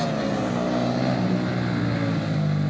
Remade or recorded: recorded